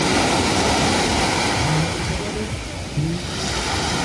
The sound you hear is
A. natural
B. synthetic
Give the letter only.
A